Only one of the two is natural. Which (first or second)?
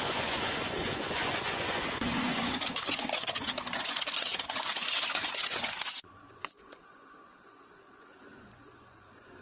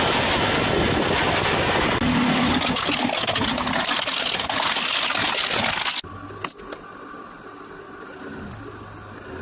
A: second